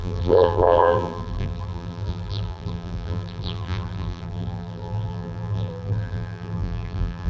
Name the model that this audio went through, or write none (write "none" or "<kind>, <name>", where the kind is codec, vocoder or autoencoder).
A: vocoder, BigVGAN v2